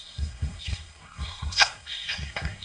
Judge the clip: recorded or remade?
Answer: remade